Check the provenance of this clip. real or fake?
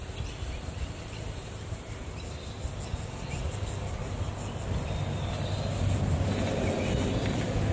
real